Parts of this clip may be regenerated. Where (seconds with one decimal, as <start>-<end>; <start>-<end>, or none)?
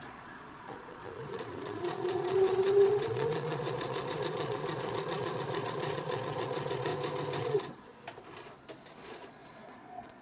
0.0-6.9; 7.4-7.9; 9.0-10.2